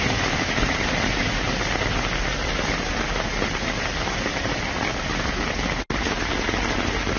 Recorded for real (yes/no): yes